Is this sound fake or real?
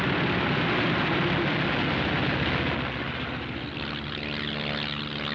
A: real